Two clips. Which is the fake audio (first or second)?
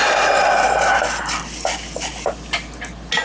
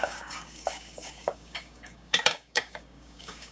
second